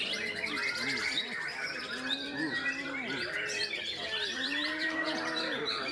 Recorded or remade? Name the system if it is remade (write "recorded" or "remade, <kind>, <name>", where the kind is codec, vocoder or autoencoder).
remade, vocoder, BigVGAN v2